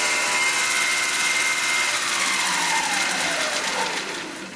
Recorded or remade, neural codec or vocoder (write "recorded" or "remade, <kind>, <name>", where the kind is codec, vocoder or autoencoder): recorded